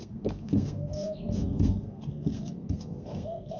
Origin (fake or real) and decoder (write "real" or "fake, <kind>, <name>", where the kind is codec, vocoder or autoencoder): fake, codec, SNAC